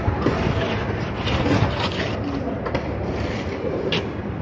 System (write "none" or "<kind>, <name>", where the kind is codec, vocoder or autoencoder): vocoder, BigVGAN v2